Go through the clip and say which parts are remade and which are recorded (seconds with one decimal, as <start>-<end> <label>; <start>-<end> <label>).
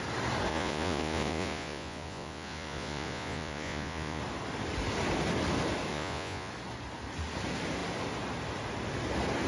0.0-0.5 recorded; 0.5-4.2 remade; 4.2-5.9 recorded; 5.9-6.5 remade; 6.5-9.5 recorded